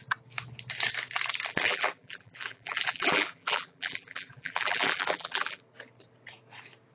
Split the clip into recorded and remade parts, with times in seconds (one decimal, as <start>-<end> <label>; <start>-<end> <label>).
0.0-1.5 recorded; 1.5-5.6 remade; 5.6-6.9 recorded